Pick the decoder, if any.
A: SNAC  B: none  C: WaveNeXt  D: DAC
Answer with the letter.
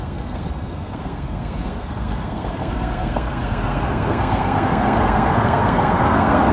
A